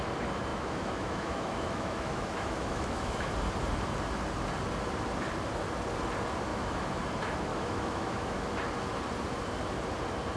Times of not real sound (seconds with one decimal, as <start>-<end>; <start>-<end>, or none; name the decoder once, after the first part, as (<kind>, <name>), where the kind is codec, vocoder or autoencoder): 0.5-3.3 (autoencoder, DAC-VAE); 6.5-7.0; 7.5-8.5